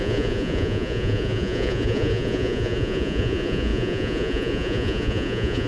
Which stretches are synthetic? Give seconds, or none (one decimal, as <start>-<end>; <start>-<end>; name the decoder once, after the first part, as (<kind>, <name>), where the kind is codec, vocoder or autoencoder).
0.0-5.7 (vocoder, Vocos)